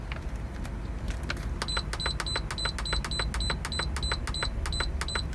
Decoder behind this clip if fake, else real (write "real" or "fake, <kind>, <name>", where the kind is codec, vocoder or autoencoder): real